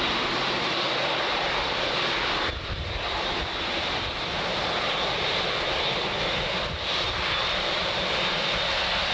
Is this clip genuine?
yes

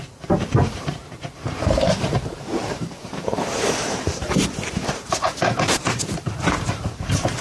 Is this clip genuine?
no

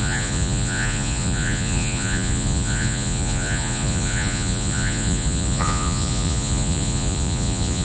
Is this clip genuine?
no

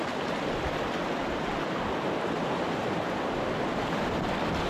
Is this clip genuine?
yes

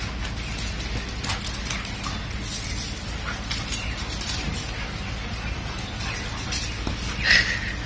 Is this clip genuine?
yes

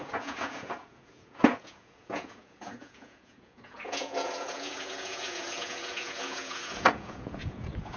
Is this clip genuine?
no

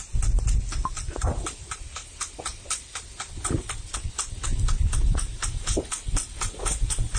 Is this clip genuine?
yes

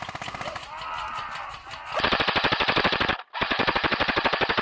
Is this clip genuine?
yes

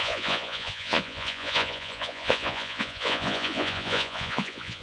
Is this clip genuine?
no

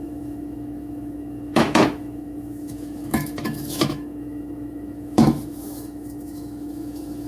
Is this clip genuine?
no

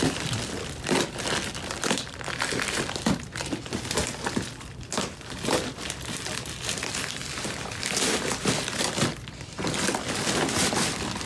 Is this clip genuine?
no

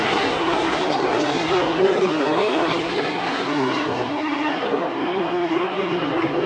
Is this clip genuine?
no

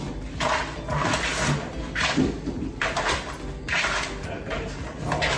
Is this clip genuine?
yes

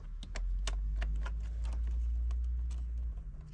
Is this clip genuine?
yes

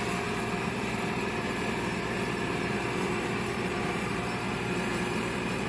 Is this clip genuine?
no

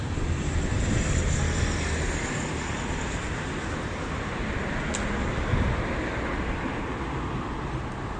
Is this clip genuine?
yes